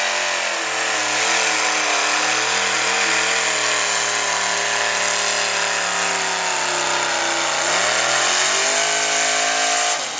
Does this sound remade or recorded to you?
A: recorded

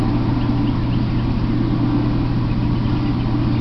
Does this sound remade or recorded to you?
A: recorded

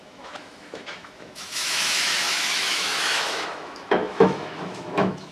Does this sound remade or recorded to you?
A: remade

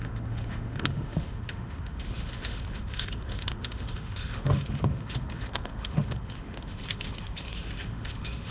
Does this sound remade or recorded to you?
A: remade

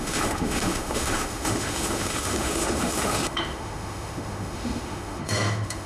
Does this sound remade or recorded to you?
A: remade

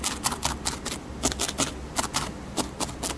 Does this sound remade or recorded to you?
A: recorded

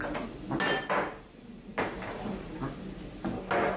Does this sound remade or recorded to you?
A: recorded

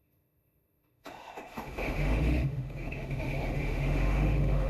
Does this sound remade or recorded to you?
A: remade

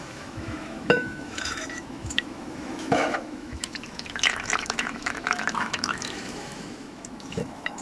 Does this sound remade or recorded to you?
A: remade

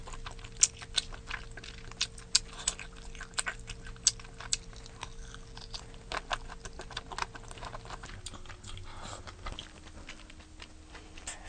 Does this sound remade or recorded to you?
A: recorded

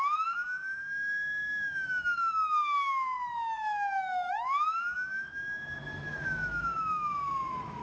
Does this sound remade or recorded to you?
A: remade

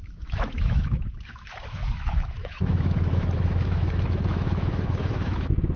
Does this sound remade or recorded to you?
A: remade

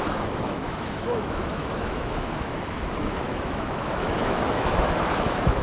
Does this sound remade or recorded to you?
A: remade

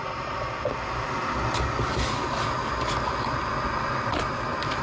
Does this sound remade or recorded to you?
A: recorded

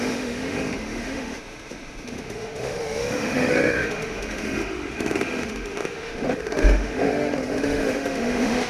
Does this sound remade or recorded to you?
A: remade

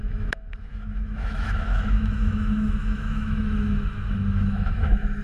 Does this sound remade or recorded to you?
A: remade